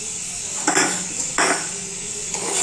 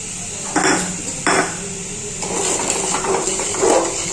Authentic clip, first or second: second